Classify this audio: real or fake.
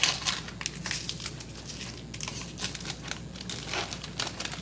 real